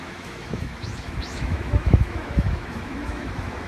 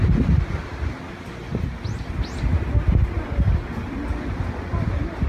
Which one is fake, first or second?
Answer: first